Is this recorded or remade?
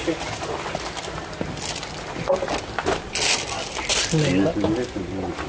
recorded